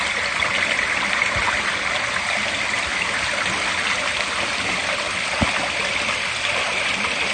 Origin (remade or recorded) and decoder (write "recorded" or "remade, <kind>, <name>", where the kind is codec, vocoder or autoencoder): recorded